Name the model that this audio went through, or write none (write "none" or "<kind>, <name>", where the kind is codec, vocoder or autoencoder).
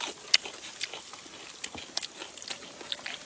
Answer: none